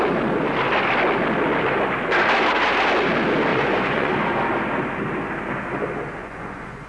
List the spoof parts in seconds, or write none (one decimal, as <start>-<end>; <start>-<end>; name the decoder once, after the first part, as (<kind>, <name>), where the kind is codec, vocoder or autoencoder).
3.5-4.2 (vocoder, Vocos); 6.2-6.9